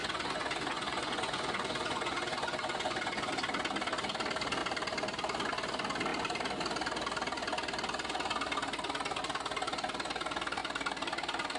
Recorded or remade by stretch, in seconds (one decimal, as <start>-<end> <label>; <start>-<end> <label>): 0.0-3.3 remade; 3.3-11.6 recorded